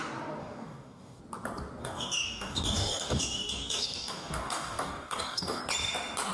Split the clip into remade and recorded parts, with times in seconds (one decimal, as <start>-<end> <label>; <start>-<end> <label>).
0.0-0.4 recorded; 0.4-1.2 remade; 1.2-1.8 recorded; 1.8-5.6 remade; 5.6-6.3 recorded